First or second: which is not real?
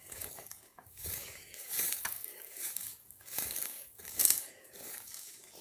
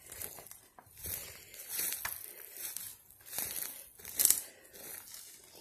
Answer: first